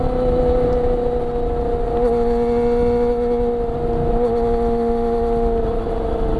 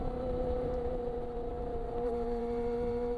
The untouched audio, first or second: first